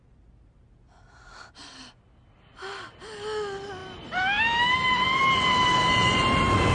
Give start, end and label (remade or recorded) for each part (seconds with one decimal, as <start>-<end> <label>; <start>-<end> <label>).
0.0-6.7 recorded